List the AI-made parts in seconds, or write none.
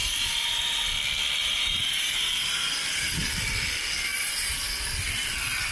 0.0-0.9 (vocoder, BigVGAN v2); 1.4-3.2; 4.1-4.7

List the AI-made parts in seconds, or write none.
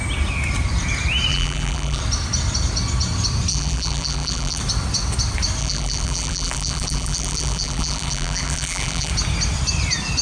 1.3-2.0 (vocoder, BigVGAN v2); 3.5-4.6; 5.6-9.1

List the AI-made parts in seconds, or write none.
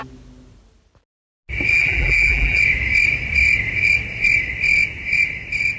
1.7-2.6 (vocoder, BigVGAN v2)